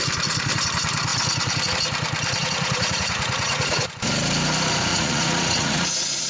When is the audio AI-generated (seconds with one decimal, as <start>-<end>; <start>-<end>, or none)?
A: 2.4-3.9; 4.9-6.3